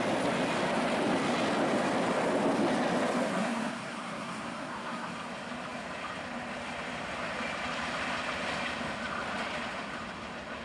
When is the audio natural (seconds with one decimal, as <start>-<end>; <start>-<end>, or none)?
0.0-3.4; 5.1-10.6